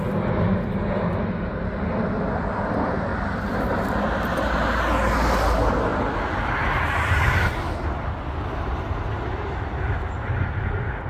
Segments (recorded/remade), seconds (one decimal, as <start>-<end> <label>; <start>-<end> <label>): 0.0-11.1 recorded